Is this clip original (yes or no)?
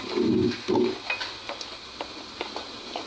yes